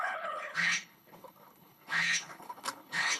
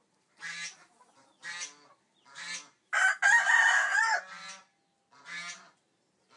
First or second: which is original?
second